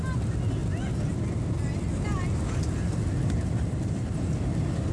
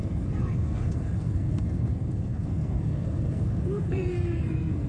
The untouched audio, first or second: first